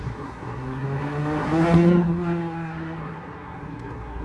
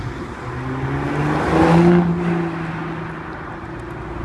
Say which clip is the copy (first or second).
first